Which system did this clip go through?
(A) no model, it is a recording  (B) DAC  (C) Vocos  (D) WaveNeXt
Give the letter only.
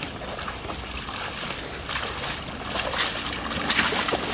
A